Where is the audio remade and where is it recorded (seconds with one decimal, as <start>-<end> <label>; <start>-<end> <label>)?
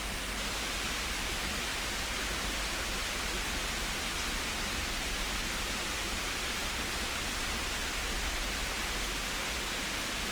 0.0-4.8 recorded; 4.8-6.4 remade; 6.4-10.3 recorded